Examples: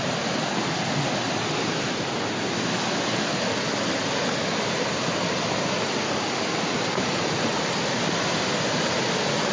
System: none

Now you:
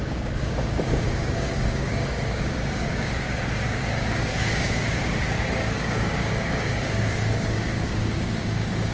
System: codec, DAC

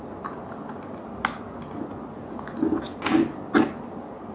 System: none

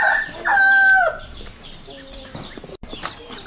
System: none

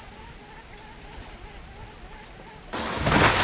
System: none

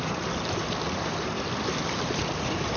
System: none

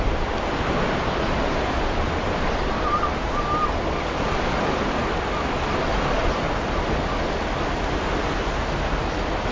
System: none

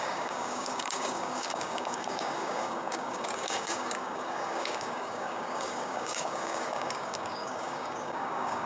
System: codec, DAC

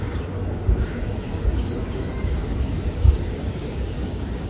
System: codec, DAC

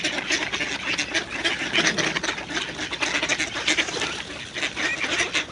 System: none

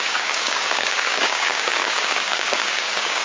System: codec, DAC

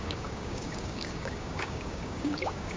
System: codec, DAC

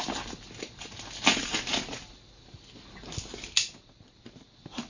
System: none